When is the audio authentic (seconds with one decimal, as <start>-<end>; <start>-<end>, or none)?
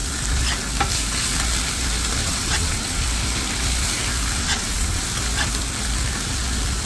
0.0-2.2; 3.0-4.4; 5.0-6.9